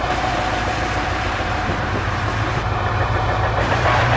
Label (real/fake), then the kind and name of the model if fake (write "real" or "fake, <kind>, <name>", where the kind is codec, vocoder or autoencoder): fake, vocoder, BigVGAN v2